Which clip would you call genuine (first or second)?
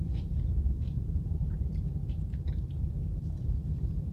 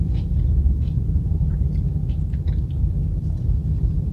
second